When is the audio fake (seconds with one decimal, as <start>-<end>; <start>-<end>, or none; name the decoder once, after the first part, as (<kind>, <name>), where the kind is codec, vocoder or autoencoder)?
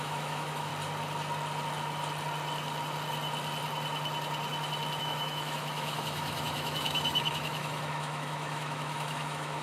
0.0-0.7 (autoencoder, DAC-VAE); 5.0-9.6